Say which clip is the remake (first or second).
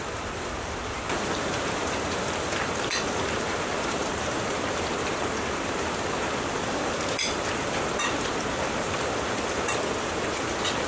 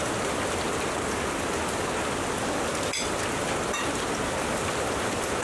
first